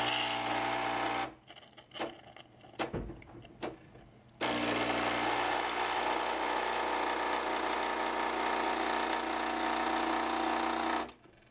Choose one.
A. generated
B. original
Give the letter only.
B